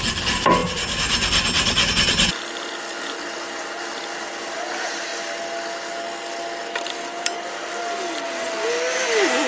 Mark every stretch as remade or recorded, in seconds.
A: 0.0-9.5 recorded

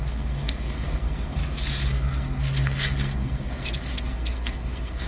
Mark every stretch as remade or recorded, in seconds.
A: 0.0-1.4 remade; 1.4-1.9 recorded; 1.9-5.1 remade